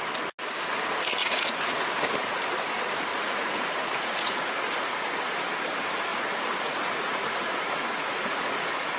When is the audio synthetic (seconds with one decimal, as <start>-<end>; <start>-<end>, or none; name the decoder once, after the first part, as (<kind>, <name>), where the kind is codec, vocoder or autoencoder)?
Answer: 1.2-2.4 (vocoder, Vocos); 3.1-5.2; 6.1-9.0